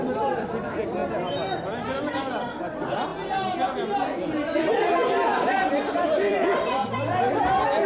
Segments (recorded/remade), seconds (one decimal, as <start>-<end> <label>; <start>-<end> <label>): 0.0-1.0 remade; 1.0-1.6 recorded; 1.6-3.1 remade; 3.1-4.7 recorded; 4.7-7.9 remade